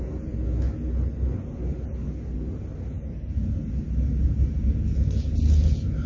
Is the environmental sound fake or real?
real